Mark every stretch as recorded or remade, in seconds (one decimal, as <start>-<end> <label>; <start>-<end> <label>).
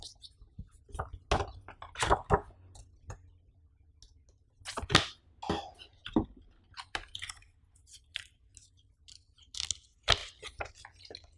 0.0-6.0 recorded; 6.0-8.3 remade; 8.3-10.2 recorded; 10.2-10.7 remade; 10.7-11.4 recorded